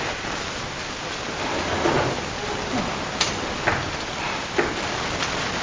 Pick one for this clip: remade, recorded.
recorded